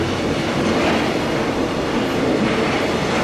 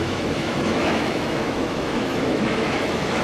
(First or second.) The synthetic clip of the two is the second